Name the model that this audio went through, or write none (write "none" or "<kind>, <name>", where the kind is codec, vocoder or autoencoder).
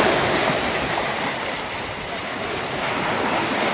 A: none